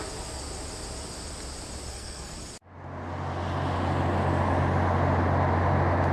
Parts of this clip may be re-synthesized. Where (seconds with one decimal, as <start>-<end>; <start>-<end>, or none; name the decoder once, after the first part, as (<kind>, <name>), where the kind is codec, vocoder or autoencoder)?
1.9-2.4 (codec, SNAC)